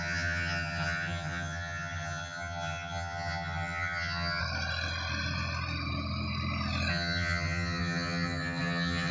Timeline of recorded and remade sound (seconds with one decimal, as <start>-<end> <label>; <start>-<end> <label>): 0.0-4.4 remade; 4.4-6.9 recorded; 6.9-9.1 remade

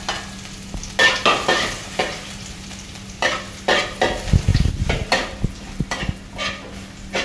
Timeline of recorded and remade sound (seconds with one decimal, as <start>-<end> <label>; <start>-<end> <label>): 0.0-1.8 recorded; 1.8-3.4 remade; 3.4-4.5 recorded; 4.5-5.7 remade; 5.7-7.2 recorded

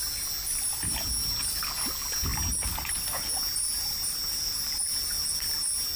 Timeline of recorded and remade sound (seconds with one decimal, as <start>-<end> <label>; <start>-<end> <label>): 0.0-6.0 recorded

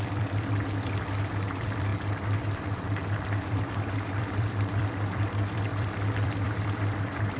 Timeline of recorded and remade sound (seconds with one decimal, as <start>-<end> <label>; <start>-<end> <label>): 0.0-7.4 remade

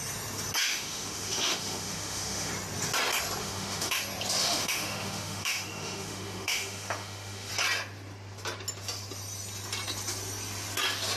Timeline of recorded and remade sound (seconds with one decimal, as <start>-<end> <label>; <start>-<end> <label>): 0.0-0.6 recorded; 0.6-2.5 remade; 2.5-3.4 recorded; 3.4-4.0 remade; 4.0-4.4 recorded; 4.4-7.5 remade; 7.5-11.2 recorded

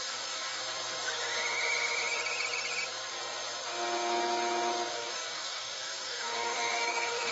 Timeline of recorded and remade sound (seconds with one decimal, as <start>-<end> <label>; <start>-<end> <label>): 0.0-0.6 remade; 0.6-4.9 recorded; 4.9-7.3 remade

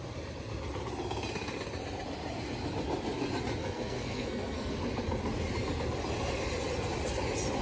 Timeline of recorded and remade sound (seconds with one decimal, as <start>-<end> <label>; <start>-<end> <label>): 0.0-3.6 recorded; 3.6-4.7 remade; 4.7-7.6 recorded

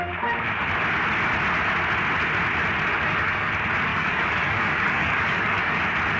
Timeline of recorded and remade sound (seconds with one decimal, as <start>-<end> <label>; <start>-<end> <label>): 0.0-2.9 recorded; 2.9-3.5 remade; 3.5-3.9 recorded; 3.9-5.8 remade; 5.8-6.2 recorded